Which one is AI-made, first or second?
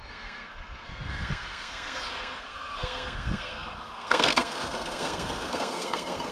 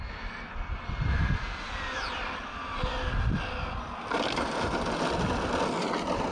first